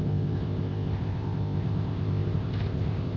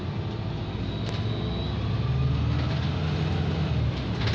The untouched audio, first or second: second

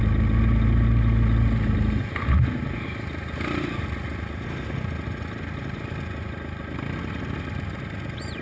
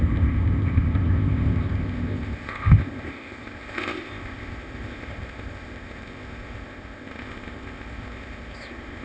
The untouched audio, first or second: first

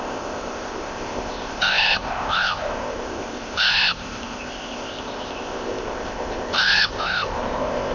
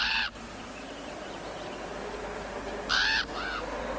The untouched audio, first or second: second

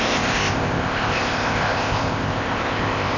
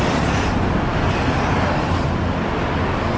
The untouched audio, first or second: second